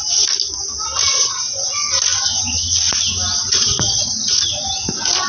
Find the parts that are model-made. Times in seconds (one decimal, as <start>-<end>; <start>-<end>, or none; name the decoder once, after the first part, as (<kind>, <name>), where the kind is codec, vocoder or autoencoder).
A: 1.1-1.7 (vocoder, Vocos); 3.4-4.1

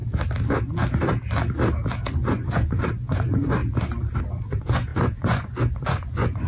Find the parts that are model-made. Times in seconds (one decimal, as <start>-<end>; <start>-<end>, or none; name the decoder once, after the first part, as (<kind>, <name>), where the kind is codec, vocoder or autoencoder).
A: 2.1-3.6 (vocoder, Vocos); 4.2-6.5